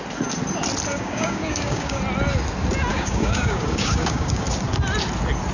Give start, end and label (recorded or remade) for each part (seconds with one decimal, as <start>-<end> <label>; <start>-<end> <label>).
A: 0.0-0.9 recorded; 0.9-2.0 remade; 2.0-2.9 recorded; 2.9-4.4 remade; 4.4-5.5 recorded